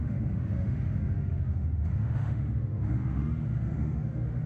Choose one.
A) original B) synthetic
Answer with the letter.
B